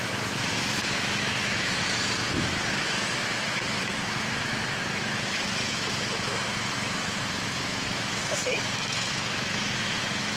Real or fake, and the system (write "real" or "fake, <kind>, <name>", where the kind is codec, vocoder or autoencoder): fake, autoencoder, DAC-VAE